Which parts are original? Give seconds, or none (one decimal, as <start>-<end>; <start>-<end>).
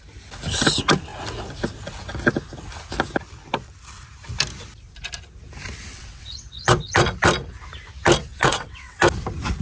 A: 0.0-5.9; 6.9-8.3; 9.0-9.6